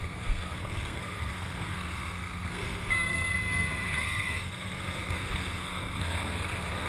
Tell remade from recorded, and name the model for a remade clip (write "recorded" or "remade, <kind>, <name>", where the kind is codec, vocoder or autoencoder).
remade, codec, SNAC